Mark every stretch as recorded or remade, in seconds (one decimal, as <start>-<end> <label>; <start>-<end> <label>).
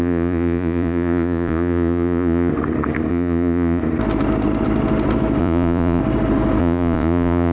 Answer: 0.0-2.5 remade; 2.5-3.1 recorded; 3.1-3.8 remade; 3.8-5.4 recorded; 5.4-6.0 remade; 6.0-6.6 recorded; 6.6-7.5 remade